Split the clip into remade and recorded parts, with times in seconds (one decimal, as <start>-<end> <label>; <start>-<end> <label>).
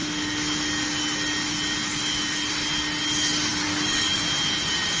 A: 0.0-3.5 recorded; 3.5-4.2 remade; 4.2-5.0 recorded